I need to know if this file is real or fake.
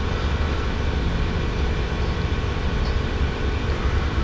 real